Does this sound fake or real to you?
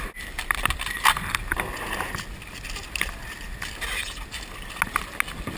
real